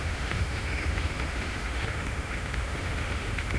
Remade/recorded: remade